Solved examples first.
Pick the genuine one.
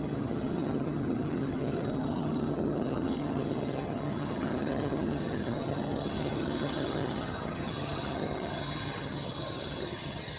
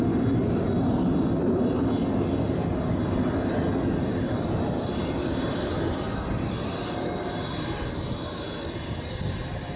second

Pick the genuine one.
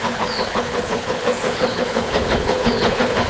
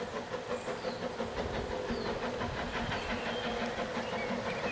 second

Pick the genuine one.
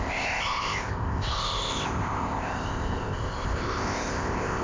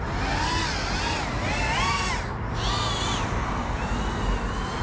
second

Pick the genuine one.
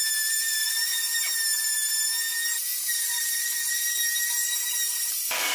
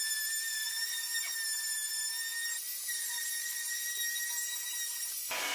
second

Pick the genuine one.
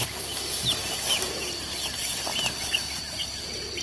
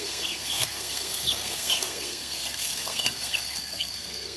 first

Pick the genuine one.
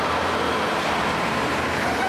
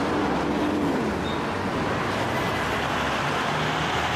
second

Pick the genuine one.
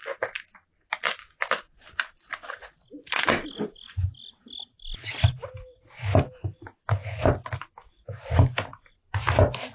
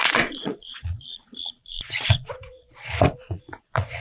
first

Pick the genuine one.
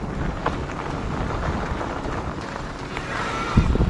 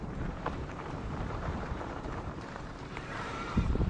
first